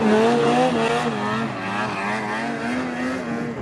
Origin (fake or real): real